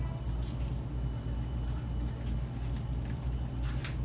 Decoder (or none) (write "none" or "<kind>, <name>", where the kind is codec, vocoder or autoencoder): none